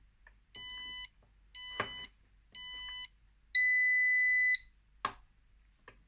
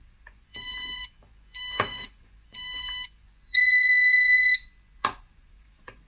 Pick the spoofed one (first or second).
second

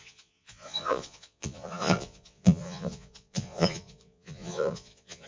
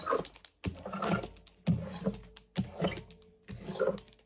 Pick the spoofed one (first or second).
first